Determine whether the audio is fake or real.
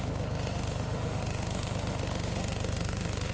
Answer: fake